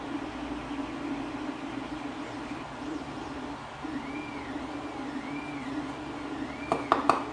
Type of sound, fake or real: real